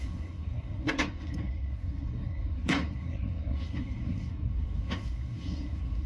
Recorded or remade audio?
remade